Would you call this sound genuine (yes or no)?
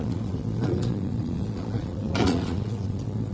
no